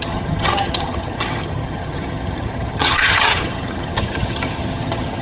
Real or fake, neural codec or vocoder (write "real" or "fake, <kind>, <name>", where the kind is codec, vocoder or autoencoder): fake, vocoder, HiFi-GAN